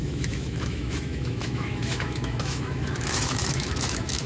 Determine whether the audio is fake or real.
fake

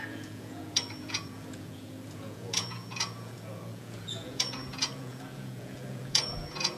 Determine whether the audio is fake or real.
fake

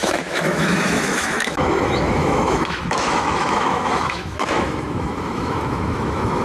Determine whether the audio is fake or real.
fake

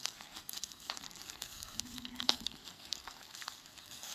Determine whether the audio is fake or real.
fake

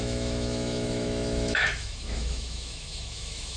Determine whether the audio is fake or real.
fake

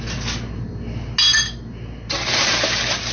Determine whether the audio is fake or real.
real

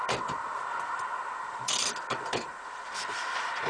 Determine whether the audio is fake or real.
fake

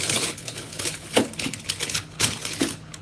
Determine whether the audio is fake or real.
fake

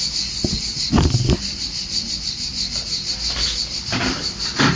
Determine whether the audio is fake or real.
real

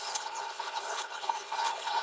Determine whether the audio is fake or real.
fake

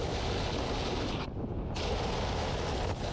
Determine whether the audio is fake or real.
real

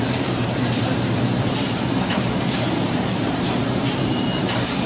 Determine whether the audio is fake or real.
fake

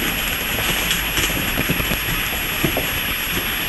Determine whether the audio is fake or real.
real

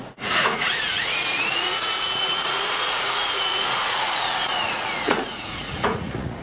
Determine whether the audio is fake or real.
fake